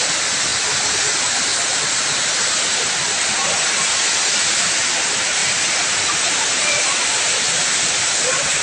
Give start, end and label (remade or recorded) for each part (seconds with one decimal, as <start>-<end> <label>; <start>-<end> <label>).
0.0-8.6 recorded